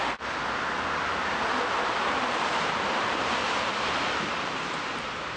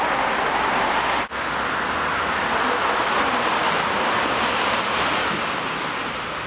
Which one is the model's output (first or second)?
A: first